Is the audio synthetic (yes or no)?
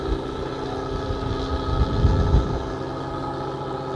no